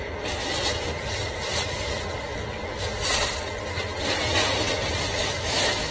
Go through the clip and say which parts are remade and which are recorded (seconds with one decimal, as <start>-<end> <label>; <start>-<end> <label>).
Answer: 0.0-5.2 recorded; 5.2-5.9 remade